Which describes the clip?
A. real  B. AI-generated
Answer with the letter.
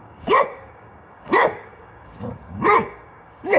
B